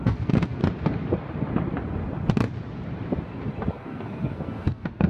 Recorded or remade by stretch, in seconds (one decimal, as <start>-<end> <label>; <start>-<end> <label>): 0.0-0.6 remade; 0.6-3.7 recorded; 3.7-5.1 remade